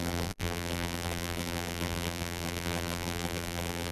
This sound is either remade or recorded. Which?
remade